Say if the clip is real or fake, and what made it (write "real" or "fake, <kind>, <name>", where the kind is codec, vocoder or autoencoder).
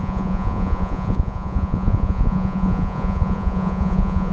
fake, vocoder, Vocos